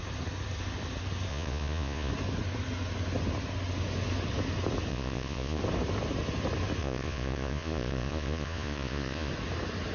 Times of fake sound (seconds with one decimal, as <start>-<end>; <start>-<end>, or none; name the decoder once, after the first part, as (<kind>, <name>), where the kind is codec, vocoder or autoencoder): 1.3-2.1 (vocoder, Vocos); 4.9-5.6; 6.8-9.3